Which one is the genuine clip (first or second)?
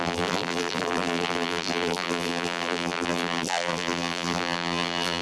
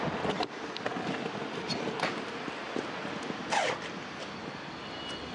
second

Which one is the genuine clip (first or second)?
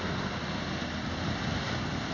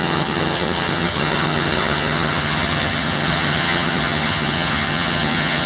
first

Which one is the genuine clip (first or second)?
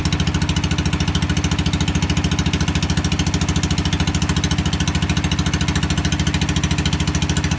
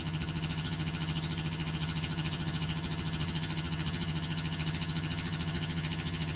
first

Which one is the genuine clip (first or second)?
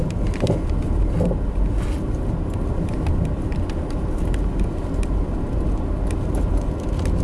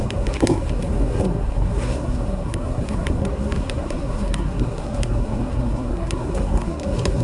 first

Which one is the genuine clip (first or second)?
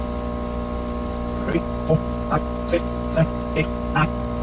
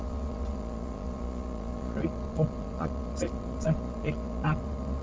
first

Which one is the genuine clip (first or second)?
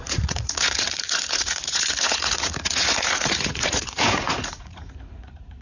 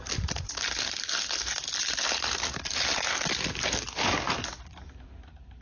second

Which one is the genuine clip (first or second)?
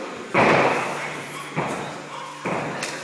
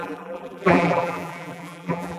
first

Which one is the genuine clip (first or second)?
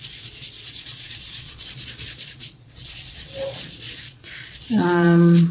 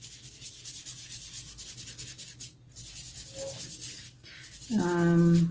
second